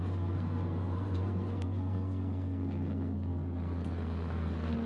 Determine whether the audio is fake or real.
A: fake